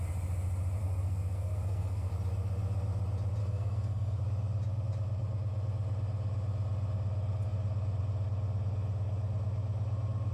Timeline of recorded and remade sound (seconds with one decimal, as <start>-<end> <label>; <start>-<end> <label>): 0.0-0.8 recorded; 0.8-2.1 remade; 2.1-3.4 recorded; 3.4-4.2 remade; 4.2-10.3 recorded